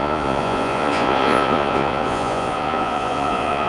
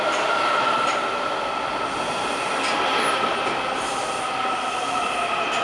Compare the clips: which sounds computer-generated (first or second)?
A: first